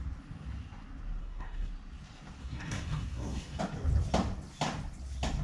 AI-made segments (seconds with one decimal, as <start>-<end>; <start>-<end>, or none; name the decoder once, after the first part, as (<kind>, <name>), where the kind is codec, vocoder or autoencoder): 1.2-1.7 (codec, SNAC); 2.4-3.6